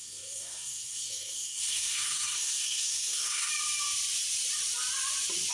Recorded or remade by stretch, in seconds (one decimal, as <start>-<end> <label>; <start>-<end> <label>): 0.0-3.5 remade; 3.5-5.5 recorded